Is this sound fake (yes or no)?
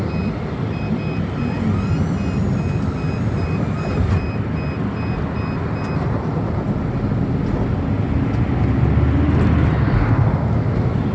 no